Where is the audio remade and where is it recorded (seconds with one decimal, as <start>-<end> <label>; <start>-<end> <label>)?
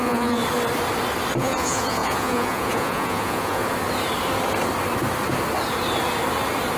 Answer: 0.0-0.4 remade; 0.4-1.4 recorded; 1.4-3.6 remade; 3.6-6.8 recorded